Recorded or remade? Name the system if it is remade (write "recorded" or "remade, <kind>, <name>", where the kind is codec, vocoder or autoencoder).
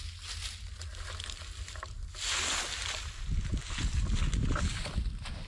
recorded